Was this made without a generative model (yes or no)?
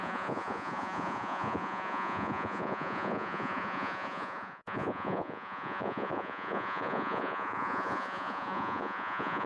no